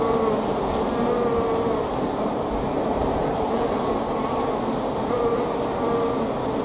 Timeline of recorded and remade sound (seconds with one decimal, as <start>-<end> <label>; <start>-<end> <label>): 0.0-1.9 recorded; 1.9-5.9 remade; 5.9-6.6 recorded